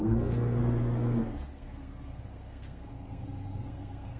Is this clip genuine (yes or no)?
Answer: no